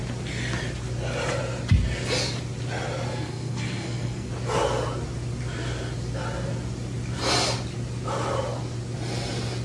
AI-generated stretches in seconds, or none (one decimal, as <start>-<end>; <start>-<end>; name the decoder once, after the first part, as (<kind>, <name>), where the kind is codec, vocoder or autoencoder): 3.1-4.3 (codec, SNAC)